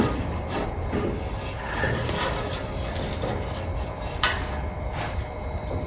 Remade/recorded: recorded